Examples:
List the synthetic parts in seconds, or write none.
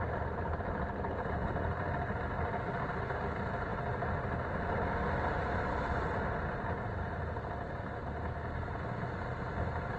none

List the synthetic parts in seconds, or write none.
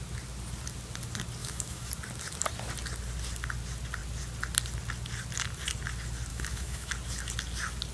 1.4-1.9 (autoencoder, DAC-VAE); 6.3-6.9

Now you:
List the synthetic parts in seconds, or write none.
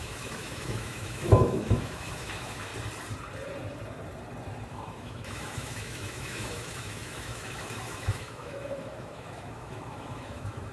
0.0-2.7 (autoencoder, DAC-VAE); 4.7-10.7